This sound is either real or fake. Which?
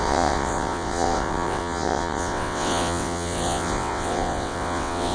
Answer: fake